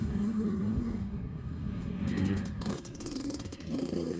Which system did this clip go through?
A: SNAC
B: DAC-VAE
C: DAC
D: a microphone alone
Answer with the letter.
A